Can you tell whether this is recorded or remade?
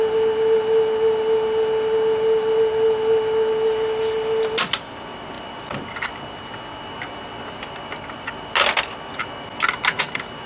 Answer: recorded